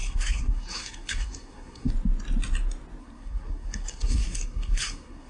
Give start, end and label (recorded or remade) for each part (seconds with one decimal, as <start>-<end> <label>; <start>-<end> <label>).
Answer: 0.0-1.9 remade; 1.9-3.0 recorded; 3.0-5.3 remade